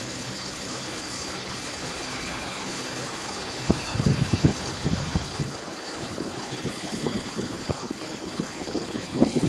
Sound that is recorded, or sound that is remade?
remade